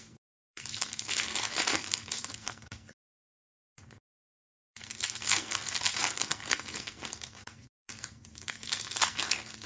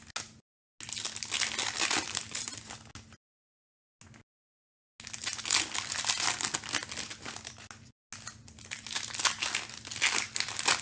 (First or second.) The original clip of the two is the second